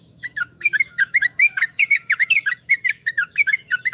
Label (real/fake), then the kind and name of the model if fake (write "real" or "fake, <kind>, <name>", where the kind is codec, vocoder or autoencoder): fake, autoencoder, DAC-VAE